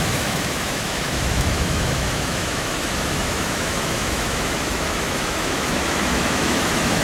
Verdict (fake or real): fake